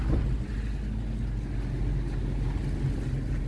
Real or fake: real